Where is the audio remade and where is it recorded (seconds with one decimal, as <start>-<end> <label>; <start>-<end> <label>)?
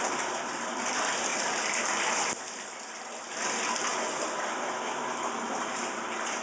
0.0-1.3 remade; 1.3-2.4 recorded; 2.4-3.9 remade; 3.9-5.8 recorded; 5.8-6.4 remade